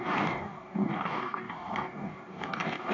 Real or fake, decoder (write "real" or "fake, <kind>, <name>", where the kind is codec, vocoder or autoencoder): fake, codec, DAC